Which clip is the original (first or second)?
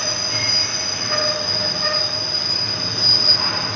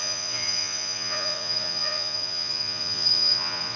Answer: first